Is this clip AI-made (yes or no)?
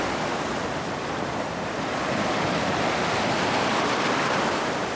no